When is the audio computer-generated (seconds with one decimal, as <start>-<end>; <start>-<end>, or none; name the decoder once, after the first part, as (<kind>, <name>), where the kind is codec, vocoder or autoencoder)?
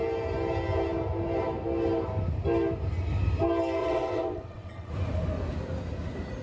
3.8-4.9 (vocoder, WaveNeXt)